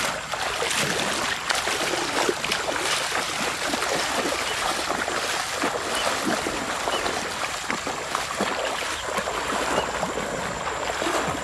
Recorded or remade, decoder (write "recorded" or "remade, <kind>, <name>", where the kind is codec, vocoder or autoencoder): recorded